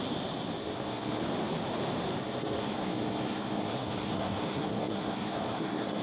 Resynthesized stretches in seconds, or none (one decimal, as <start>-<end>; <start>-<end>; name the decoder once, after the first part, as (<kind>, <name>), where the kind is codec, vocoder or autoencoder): 0.6-1.2 (codec, SNAC); 2.2-6.0